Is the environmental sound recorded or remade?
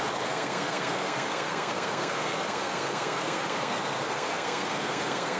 remade